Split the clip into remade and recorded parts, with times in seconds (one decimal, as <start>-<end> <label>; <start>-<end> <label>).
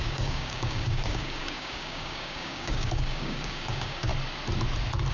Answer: 0.0-4.1 remade; 4.1-5.1 recorded